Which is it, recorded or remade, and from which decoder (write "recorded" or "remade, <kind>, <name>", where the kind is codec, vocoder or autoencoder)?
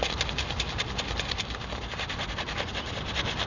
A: recorded